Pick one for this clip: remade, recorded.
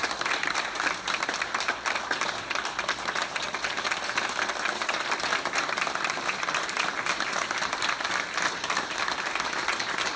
remade